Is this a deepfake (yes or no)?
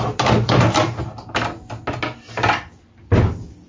no